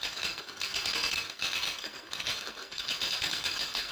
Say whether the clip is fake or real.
fake